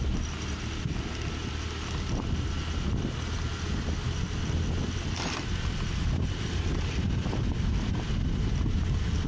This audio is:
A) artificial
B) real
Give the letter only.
B